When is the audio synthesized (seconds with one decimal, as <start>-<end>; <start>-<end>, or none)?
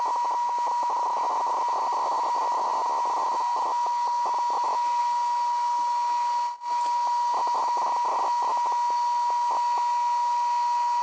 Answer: none